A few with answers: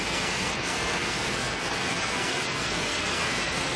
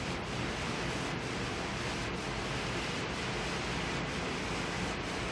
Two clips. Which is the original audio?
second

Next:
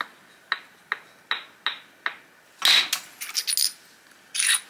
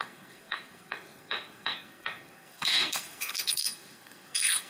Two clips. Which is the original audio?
first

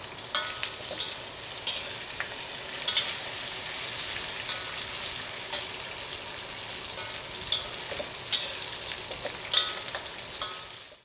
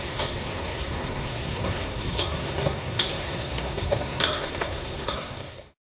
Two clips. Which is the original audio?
first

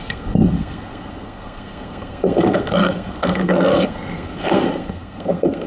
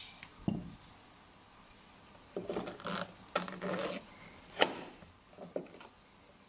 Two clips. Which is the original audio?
second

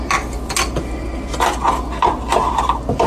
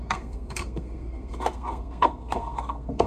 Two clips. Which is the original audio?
first